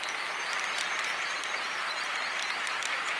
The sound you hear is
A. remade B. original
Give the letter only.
B